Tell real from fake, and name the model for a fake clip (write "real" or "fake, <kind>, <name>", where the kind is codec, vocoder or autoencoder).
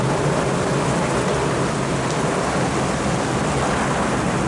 real